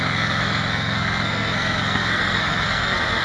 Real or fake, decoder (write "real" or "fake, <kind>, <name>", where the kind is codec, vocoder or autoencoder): fake, codec, SNAC